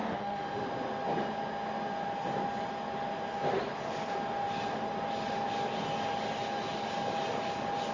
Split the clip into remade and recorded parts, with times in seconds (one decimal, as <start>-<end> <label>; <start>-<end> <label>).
0.0-0.7 remade; 0.7-7.9 recorded